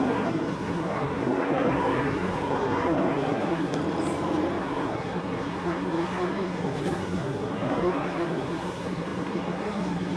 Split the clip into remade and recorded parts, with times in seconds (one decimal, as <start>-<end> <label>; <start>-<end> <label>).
0.0-3.8 remade; 3.8-4.6 recorded; 4.6-10.2 remade

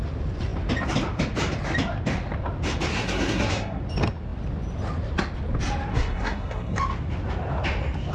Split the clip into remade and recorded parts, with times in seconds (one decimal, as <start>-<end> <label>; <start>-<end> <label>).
0.0-2.9 recorded; 2.9-3.8 remade; 3.8-5.9 recorded; 5.9-6.8 remade; 6.8-8.1 recorded

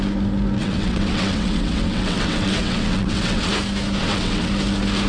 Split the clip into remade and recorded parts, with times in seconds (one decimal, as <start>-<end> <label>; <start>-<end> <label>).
0.0-0.6 recorded; 0.6-3.5 remade; 3.5-4.0 recorded; 4.0-4.5 remade; 4.5-5.1 recorded

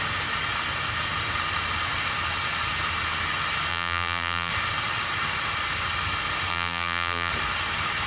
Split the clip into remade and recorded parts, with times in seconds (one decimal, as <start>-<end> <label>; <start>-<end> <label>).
0.0-3.7 recorded; 3.7-4.5 remade; 4.5-6.5 recorded; 6.5-7.3 remade; 7.3-8.1 recorded

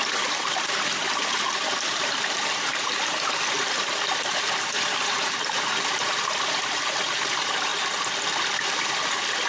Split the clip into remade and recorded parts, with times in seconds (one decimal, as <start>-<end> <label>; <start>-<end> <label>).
0.0-7.7 remade; 7.7-8.5 recorded; 8.5-9.5 remade